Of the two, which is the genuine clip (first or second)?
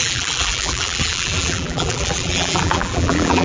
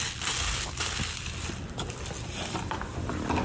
second